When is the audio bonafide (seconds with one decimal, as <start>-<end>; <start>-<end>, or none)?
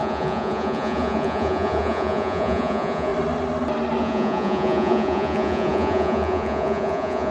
3.1-4.0